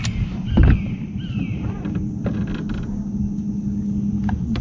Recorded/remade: recorded